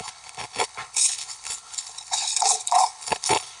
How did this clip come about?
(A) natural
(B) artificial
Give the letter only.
B